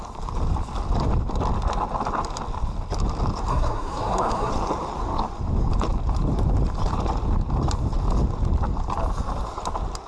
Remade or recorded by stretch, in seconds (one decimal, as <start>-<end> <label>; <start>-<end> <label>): 0.0-3.5 recorded; 3.5-4.5 remade; 4.5-10.1 recorded